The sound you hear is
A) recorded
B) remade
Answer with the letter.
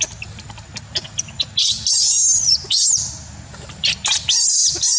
A